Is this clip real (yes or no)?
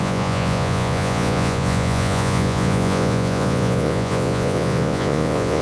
no